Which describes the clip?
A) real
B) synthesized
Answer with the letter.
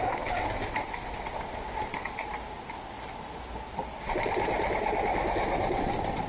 A